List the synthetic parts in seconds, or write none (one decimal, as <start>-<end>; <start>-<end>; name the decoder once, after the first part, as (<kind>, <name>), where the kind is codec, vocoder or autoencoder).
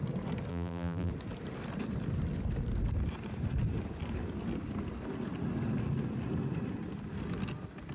0.5-1.1 (vocoder, BigVGAN v2)